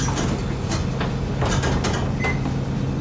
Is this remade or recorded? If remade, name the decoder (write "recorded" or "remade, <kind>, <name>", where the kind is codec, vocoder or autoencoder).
recorded